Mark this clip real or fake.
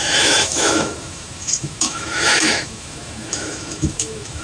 fake